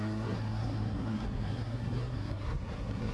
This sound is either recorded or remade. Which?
remade